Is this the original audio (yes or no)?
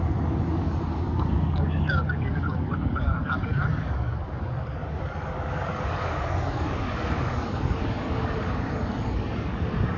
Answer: no